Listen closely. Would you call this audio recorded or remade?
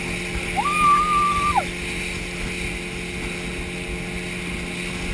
recorded